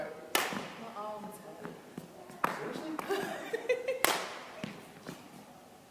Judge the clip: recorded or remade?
recorded